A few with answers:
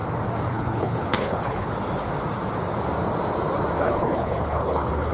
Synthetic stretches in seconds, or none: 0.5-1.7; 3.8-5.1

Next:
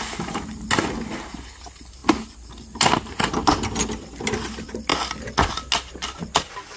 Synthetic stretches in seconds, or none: none

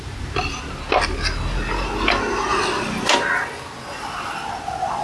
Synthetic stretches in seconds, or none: none

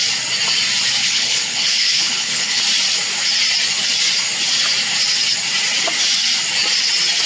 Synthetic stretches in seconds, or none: 1.0-2.6

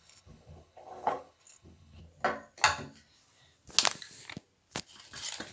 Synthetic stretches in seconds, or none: 0.0-2.0